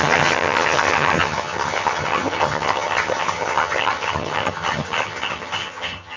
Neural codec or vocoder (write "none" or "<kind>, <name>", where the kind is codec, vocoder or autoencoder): vocoder, HiFi-GAN